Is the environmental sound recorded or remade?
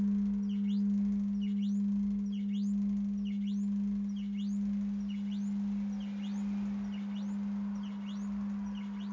recorded